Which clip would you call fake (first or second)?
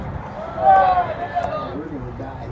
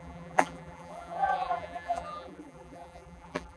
second